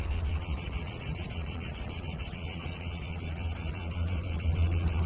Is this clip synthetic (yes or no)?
yes